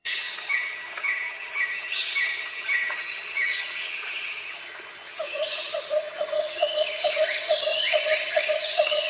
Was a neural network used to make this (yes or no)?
yes